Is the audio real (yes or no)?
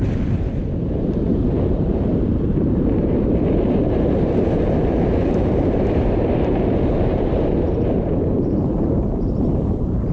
no